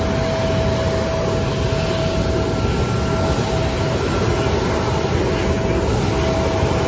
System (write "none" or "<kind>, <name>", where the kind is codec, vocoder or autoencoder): none